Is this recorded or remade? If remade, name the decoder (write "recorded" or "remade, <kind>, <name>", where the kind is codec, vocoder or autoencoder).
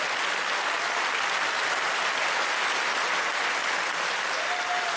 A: recorded